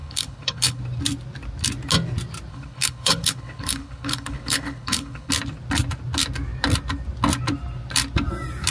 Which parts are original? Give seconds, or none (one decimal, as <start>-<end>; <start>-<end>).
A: 0.8-2.5; 5.3-8.7